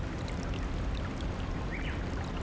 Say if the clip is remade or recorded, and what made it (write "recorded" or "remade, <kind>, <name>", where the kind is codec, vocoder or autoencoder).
recorded